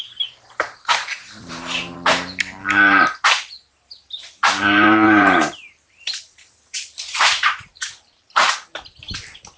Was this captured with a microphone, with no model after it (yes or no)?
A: no